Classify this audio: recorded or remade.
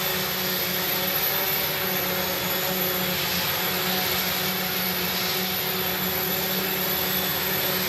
recorded